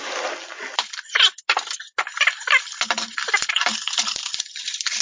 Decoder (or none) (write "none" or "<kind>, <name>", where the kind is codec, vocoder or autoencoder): none